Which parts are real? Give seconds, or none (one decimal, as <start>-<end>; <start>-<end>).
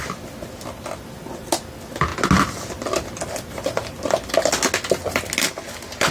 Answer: 0.0-6.1